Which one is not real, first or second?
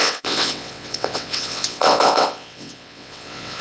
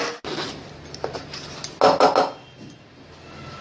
first